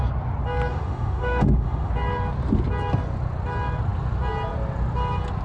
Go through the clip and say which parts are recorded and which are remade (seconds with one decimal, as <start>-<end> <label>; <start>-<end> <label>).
0.0-0.7 recorded; 0.7-1.9 remade; 1.9-5.4 recorded